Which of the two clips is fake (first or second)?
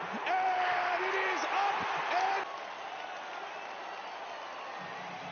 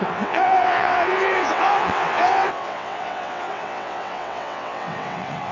second